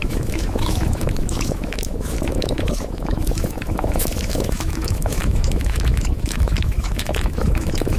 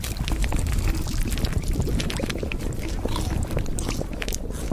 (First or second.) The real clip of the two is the second